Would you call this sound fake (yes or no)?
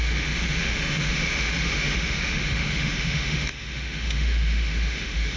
yes